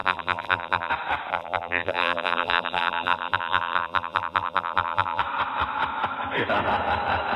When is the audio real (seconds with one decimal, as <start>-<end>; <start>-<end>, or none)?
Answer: 0.9-1.3; 5.2-7.4